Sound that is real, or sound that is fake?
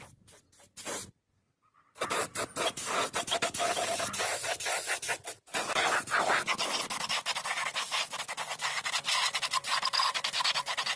real